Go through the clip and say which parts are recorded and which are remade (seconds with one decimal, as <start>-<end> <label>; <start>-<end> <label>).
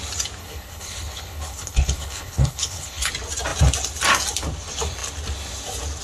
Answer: 0.0-0.4 recorded; 0.4-3.1 remade; 3.1-6.0 recorded